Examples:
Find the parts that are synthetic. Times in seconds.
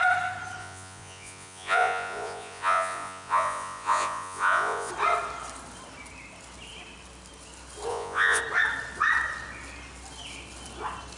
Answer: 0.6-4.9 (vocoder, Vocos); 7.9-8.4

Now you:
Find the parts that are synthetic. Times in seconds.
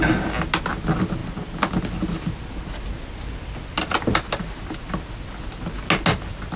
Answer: none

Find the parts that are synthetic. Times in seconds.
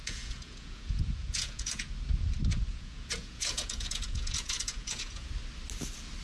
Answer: 0.0-1.9 (vocoder, Vocos); 2.7-5.3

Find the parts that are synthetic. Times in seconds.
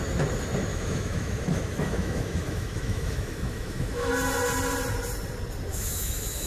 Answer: 0.7-4.1 (autoencoder, DAC-VAE); 5.7-6.5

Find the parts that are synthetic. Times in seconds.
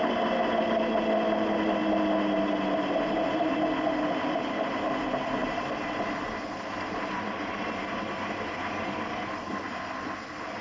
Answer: none